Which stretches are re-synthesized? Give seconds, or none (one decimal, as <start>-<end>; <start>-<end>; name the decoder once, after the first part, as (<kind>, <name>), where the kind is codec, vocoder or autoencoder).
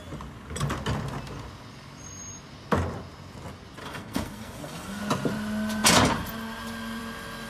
3.8-5.0 (codec, SNAC)